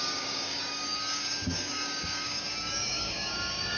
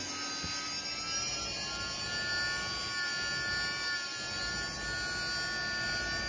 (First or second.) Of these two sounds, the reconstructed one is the first